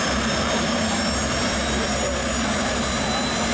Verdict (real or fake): real